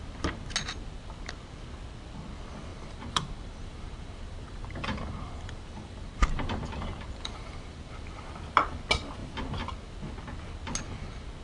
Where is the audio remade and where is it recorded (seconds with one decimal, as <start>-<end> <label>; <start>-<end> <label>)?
0.0-2.7 recorded; 2.7-7.9 remade; 7.9-11.4 recorded